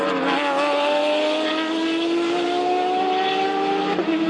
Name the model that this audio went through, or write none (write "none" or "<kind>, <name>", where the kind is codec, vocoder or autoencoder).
none